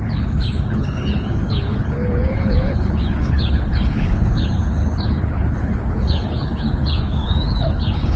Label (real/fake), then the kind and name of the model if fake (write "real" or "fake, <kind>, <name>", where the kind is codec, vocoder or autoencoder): fake, codec, HILCodec